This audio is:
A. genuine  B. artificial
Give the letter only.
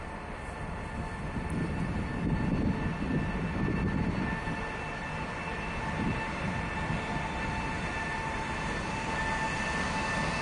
A